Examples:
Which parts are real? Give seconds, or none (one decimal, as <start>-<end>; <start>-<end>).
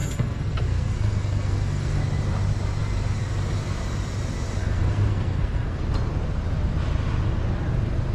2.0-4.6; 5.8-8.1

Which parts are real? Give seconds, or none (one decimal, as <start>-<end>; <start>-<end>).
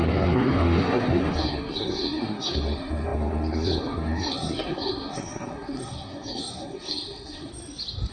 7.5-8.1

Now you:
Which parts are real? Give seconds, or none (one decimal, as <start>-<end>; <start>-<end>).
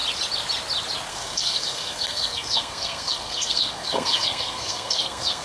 0.0-1.1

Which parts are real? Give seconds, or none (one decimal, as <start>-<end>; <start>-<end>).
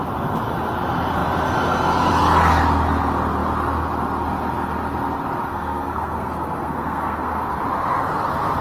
0.0-5.5; 7.6-8.6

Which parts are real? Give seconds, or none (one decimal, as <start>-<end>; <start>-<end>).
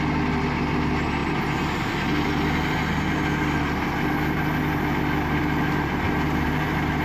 0.0-7.0